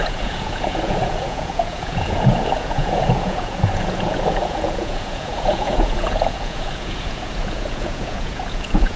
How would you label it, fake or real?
fake